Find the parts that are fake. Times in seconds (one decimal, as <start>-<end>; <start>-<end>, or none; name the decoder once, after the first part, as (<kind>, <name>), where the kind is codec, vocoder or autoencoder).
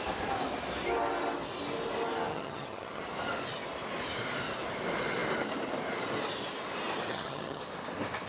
2.3-3.0 (vocoder, HiFi-GAN); 7.1-7.6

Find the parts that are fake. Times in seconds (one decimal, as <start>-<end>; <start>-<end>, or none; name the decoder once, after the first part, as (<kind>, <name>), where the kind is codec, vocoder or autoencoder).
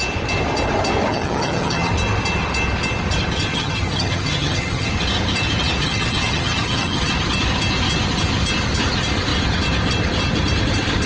1.1-1.9 (vocoder, HiFi-GAN); 3.5-4.9; 5.8-7.1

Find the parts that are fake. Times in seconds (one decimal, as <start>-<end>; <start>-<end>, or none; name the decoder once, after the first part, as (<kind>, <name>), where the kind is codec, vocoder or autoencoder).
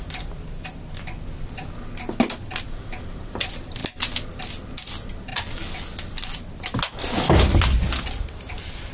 none